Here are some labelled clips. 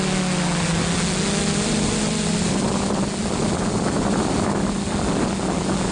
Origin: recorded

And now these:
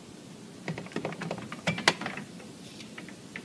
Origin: recorded